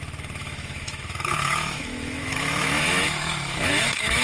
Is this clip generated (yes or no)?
yes